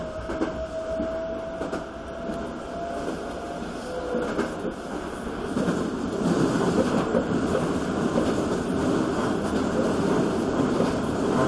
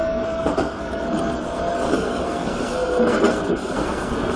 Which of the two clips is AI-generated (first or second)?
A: second